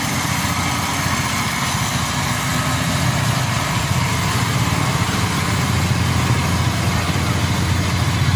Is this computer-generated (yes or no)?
no